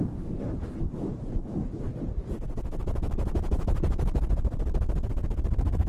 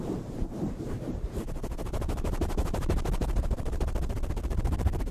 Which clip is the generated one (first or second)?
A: second